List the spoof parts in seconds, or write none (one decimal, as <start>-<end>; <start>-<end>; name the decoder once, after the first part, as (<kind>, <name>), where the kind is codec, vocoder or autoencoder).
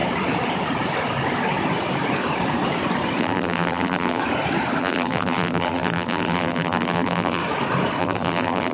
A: 3.2-4.2 (vocoder, BigVGAN v2); 4.8-7.4; 8.0-8.7